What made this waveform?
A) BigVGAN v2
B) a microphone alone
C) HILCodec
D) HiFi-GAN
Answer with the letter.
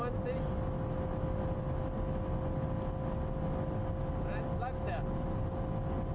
B